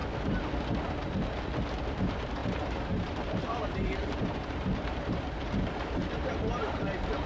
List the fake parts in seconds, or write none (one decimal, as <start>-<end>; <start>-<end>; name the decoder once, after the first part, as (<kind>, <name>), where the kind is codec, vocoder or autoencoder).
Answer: 2.4-6.8 (vocoder, BigVGAN v2)